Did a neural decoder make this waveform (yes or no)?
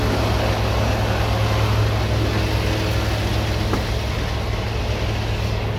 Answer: no